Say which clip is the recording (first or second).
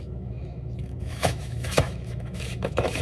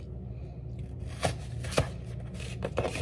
second